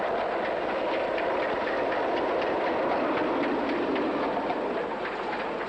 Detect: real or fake real